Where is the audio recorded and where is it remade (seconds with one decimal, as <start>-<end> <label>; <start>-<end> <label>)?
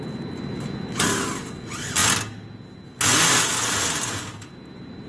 0.0-5.1 recorded